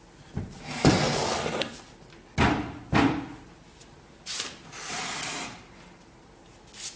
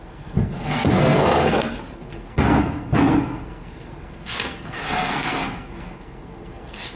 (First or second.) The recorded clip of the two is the first